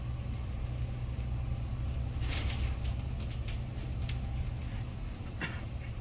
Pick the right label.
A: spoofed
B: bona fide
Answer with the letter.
B